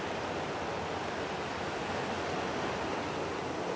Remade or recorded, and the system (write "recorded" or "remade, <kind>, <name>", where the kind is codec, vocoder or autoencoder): recorded